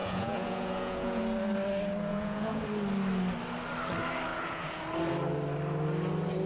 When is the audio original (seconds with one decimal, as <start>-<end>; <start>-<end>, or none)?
1.2-2.1; 2.6-4.3; 4.8-6.5